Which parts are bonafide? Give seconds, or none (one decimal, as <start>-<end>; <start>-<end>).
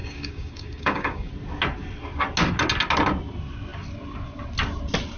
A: 1.3-5.2